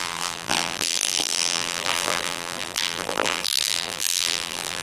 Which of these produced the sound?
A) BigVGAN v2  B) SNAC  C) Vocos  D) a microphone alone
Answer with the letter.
A